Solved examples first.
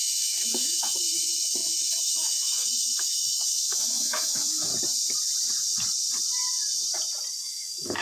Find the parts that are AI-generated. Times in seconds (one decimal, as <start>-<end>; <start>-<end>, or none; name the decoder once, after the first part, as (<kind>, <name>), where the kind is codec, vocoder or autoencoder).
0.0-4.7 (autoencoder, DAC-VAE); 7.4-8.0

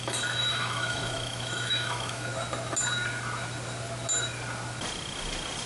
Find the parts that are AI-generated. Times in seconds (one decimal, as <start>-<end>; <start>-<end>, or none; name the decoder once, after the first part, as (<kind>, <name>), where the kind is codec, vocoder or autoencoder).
0.0-2.3 (autoencoder, DAC-VAE)

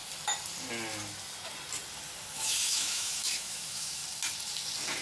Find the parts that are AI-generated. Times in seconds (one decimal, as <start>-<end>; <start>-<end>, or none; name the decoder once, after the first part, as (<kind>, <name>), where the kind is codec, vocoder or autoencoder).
2.3-4.0 (autoencoder, DAC-VAE)

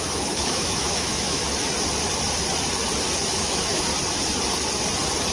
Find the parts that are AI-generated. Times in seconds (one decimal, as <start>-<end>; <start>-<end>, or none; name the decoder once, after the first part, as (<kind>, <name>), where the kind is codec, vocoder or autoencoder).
0.0-1.4 (autoencoder, DAC-VAE); 3.3-3.9

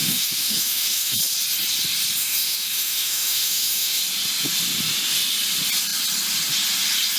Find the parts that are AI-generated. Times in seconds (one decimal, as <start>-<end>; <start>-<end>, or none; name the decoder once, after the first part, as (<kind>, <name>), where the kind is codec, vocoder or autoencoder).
0.0-1.2 (autoencoder, DAC-VAE); 2.2-4.0

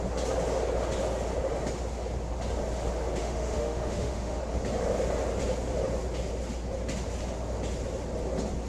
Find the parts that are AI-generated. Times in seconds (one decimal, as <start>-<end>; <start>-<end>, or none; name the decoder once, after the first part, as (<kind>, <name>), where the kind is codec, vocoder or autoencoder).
3.2-4.4 (autoencoder, DAC-VAE)